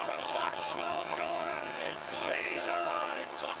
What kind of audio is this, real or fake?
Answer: fake